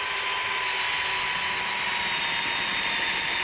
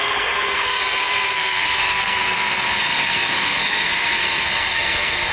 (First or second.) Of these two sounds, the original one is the first